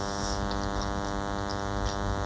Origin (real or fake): real